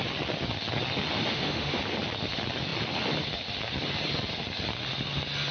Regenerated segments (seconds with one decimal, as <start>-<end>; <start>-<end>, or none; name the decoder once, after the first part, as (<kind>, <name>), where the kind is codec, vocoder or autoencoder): 1.3-1.8 (autoencoder, DAC-VAE)